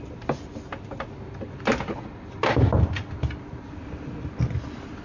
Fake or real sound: real